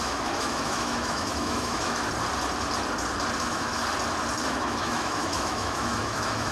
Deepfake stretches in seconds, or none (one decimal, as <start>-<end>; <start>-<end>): 0.0-2.0; 3.4-3.8; 4.4-6.5

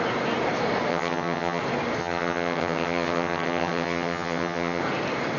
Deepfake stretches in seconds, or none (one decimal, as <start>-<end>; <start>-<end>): 0.9-1.6; 2.0-4.8